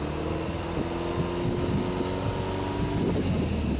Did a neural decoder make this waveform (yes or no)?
no